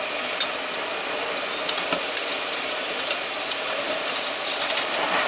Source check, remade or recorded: recorded